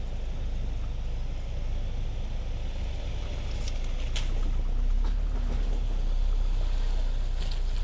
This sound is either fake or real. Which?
real